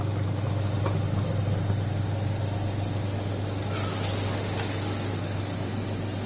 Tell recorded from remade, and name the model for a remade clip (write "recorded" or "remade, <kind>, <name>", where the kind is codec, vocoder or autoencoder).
recorded